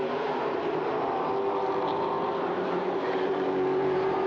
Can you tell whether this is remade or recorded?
remade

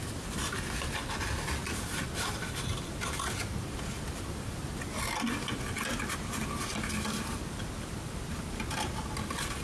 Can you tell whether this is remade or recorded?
recorded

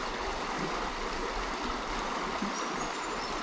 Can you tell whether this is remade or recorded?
recorded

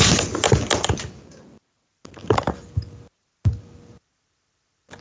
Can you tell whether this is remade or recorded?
recorded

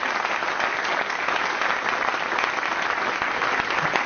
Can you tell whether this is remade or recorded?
recorded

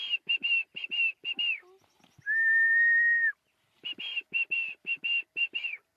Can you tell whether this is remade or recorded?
recorded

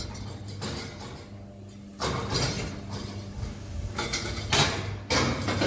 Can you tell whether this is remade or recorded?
recorded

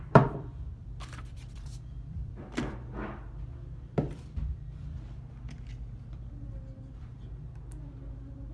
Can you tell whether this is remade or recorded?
remade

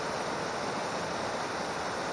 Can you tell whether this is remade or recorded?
recorded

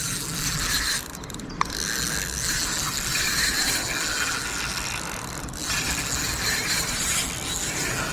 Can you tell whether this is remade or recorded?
recorded